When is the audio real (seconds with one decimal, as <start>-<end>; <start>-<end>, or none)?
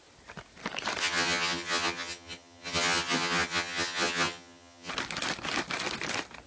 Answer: 0.0-1.0; 4.9-6.5